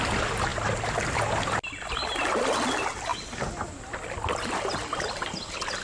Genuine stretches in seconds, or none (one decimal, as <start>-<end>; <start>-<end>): 0.0-5.8